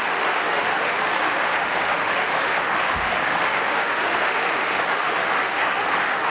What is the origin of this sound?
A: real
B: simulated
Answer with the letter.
B